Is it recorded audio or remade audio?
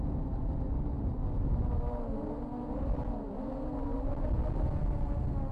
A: recorded